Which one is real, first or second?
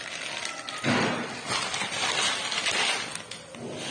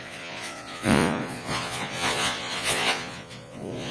first